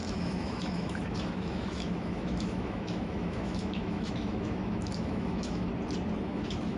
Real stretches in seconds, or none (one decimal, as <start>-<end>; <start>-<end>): 5.7-6.2